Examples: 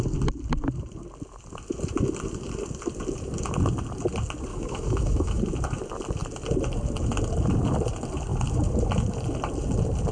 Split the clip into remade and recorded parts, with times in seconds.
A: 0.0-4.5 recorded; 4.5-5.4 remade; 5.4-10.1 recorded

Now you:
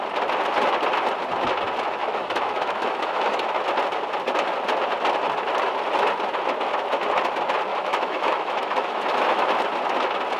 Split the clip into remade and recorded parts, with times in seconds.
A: 0.0-2.0 recorded; 2.0-3.4 remade; 3.4-7.7 recorded; 7.7-9.5 remade; 9.5-10.4 recorded

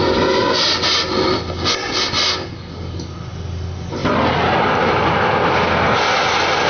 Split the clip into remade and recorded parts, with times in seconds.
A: 0.0-6.7 recorded

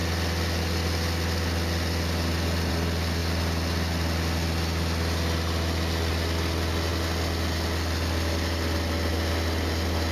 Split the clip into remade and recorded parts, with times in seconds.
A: 0.0-10.1 recorded

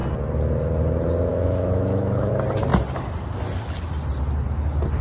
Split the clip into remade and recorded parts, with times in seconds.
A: 0.0-1.3 recorded; 1.3-2.3 remade; 2.3-5.0 recorded